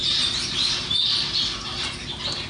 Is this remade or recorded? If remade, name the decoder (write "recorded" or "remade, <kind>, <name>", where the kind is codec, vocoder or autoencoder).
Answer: recorded